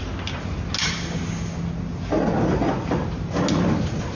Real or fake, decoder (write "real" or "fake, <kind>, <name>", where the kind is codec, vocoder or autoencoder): real